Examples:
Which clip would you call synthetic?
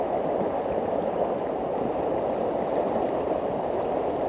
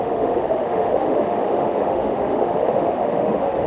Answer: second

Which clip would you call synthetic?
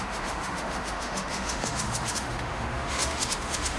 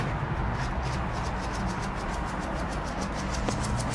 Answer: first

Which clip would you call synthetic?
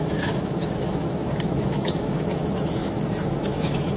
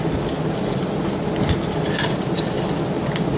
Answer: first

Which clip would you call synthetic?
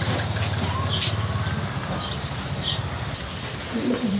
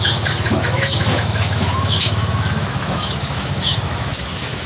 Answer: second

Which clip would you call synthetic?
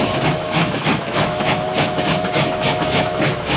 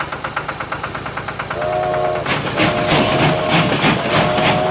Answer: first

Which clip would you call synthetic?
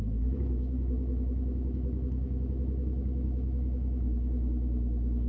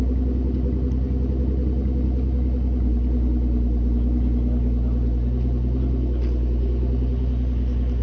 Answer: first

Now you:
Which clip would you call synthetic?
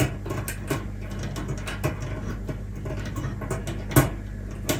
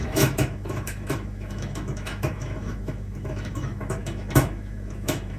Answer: second